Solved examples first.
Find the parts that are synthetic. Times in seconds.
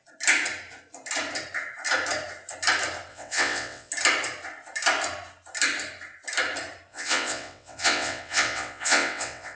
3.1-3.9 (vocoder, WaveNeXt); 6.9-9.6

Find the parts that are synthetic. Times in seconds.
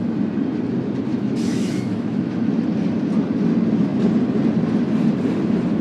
1.1-2.5 (autoencoder, DAC-VAE)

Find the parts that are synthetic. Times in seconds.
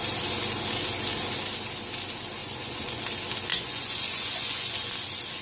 2.4-3.0 (vocoder, Vocos); 3.5-4.9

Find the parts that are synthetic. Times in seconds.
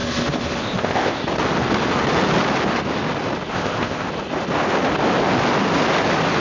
0.6-1.2 (codec, ZipCodec); 3.5-4.1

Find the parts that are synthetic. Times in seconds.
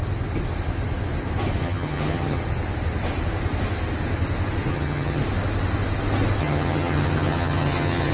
1.6-2.4 (vocoder, HiFi-GAN); 4.7-5.2; 6.4-8.1